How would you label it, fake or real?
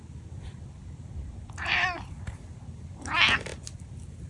real